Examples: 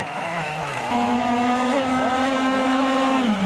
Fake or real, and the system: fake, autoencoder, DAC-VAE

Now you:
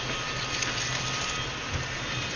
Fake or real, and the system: real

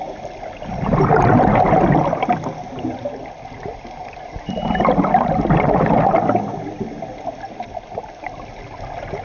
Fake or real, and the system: real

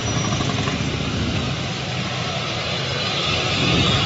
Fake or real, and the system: real